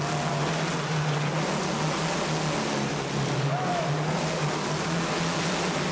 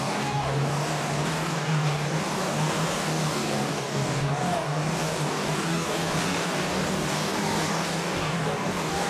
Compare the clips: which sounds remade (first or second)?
second